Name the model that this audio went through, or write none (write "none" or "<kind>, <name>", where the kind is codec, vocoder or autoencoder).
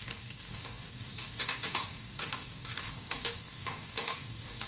codec, DAC